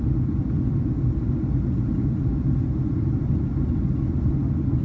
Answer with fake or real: real